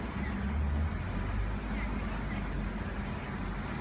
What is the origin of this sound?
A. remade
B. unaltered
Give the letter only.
B